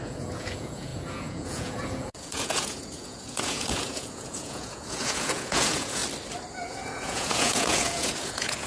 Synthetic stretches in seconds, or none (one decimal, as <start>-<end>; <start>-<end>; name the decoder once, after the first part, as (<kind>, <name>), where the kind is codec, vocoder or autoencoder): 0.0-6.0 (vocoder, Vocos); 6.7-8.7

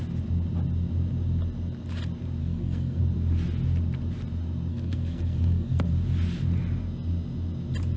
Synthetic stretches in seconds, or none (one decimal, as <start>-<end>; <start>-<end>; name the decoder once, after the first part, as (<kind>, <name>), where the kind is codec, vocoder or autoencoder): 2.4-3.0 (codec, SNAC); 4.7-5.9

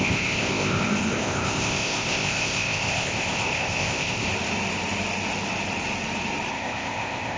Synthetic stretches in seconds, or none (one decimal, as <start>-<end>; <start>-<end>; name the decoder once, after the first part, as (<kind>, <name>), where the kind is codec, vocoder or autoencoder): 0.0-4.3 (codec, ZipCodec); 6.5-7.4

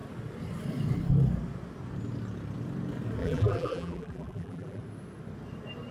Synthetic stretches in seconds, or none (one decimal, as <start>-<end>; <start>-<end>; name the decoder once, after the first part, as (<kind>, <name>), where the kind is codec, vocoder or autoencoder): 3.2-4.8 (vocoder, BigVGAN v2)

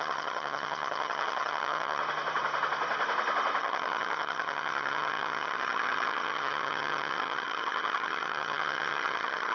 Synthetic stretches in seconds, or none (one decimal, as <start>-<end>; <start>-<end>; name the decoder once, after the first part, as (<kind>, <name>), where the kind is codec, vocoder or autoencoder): 0.0-2.0 (vocoder, HiFi-GAN); 3.6-9.5

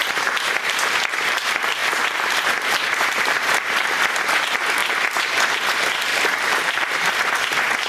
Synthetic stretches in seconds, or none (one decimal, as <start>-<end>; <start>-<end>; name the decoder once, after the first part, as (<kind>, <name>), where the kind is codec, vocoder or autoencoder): 1.8-3.9 (vocoder, BigVGAN v2); 6.1-7.3